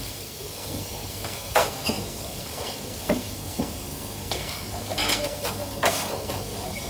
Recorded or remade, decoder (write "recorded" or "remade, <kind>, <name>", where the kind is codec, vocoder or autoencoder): remade, codec, SNAC